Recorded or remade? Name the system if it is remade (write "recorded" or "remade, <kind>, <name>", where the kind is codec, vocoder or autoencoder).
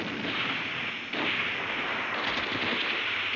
recorded